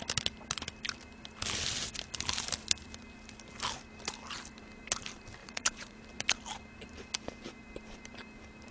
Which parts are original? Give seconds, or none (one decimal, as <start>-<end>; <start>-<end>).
0.0-5.4; 6.0-8.7